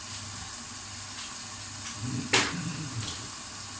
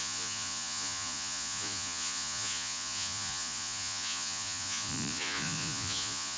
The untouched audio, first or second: first